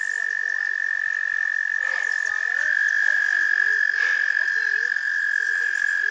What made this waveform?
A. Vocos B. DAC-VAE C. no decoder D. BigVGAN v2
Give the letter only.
C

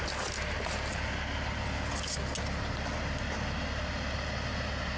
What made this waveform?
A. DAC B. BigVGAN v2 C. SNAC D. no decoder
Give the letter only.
D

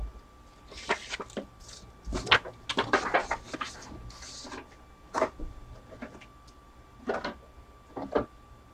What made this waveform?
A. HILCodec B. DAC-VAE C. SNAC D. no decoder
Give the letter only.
D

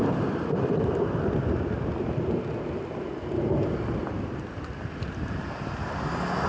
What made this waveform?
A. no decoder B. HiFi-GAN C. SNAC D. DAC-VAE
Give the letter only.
A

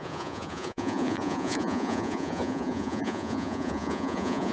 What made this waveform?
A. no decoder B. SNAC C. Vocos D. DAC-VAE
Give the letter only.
C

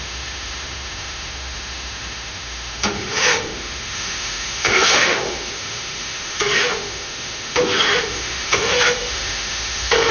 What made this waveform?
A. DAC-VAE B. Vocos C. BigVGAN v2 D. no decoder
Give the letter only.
A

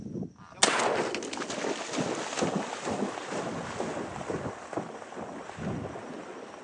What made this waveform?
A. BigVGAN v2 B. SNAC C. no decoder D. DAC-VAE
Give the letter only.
C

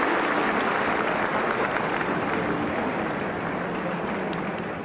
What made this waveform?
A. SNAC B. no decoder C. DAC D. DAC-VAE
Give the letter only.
B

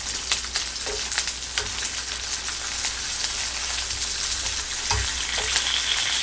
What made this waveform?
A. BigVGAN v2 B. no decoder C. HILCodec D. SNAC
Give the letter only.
B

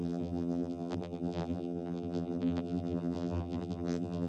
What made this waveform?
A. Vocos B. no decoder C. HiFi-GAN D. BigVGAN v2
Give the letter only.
D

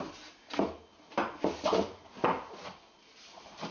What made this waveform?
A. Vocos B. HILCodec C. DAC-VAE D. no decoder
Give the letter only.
D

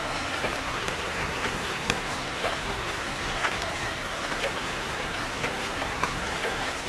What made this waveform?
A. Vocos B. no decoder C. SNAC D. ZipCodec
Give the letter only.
C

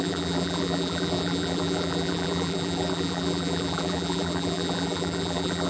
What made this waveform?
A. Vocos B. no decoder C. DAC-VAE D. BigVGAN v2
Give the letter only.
D